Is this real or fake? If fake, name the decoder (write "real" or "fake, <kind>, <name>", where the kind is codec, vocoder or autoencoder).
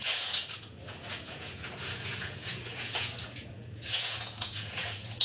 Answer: fake, vocoder, Vocos